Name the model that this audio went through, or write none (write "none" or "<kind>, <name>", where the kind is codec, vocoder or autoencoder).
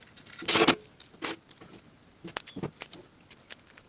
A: none